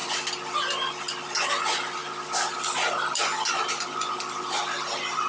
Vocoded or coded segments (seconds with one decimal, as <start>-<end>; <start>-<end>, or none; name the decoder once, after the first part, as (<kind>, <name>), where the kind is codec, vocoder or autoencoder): none